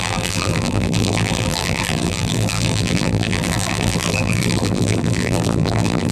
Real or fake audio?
fake